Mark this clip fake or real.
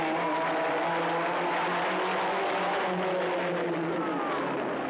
real